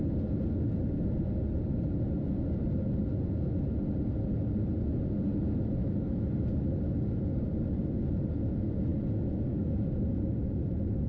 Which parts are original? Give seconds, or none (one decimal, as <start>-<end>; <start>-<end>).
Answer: 0.0-5.8; 6.4-11.1